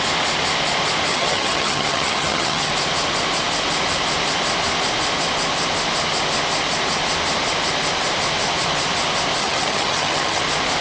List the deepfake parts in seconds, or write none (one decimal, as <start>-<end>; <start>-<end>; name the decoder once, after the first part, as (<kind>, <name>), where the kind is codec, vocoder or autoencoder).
1.1-2.7 (vocoder, HiFi-GAN); 9.4-10.4